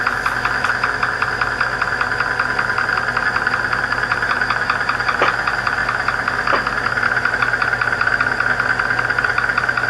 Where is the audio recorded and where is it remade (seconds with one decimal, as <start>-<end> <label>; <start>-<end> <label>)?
0.0-9.9 recorded